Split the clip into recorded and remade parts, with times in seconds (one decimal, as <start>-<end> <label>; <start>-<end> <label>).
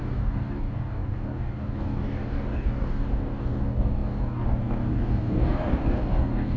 0.0-6.6 remade